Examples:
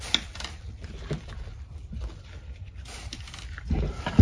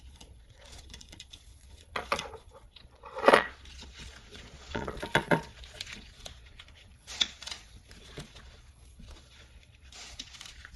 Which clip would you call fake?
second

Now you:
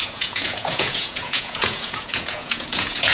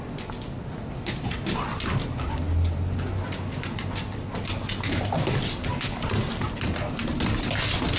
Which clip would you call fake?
first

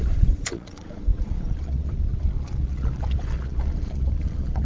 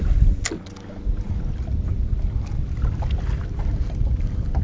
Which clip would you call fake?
first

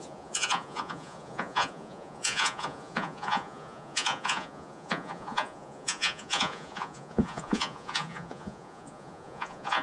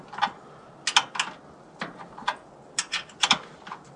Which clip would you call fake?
first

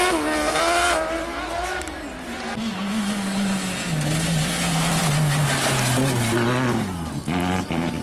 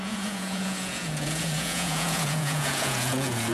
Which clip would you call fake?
second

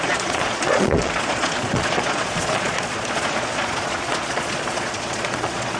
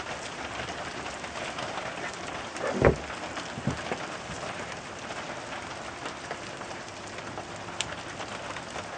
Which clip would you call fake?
first